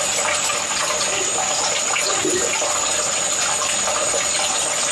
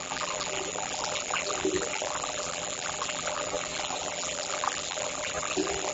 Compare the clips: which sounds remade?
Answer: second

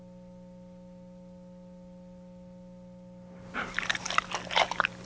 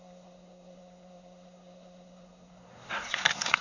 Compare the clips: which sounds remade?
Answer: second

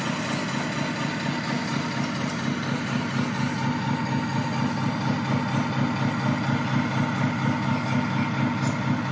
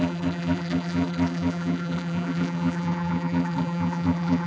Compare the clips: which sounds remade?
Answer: second